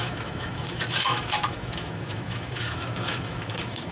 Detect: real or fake fake